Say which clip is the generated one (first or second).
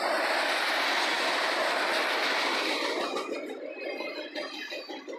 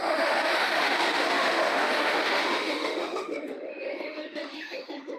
second